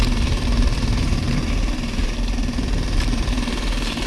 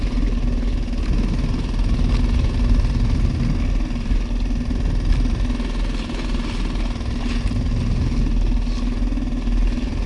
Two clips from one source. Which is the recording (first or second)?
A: second